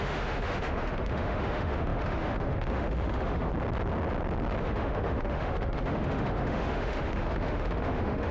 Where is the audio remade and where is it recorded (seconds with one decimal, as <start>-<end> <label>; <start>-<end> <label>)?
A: 0.0-3.5 remade; 3.5-4.6 recorded; 4.6-8.3 remade

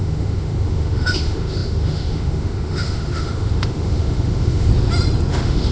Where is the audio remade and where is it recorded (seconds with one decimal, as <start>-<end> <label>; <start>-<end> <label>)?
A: 0.0-4.7 remade; 4.7-5.3 recorded; 5.3-5.7 remade

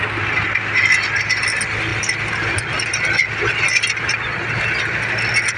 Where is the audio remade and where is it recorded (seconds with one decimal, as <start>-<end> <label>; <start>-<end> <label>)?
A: 0.0-5.6 recorded